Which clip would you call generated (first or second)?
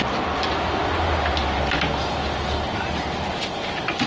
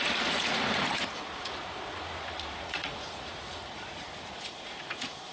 second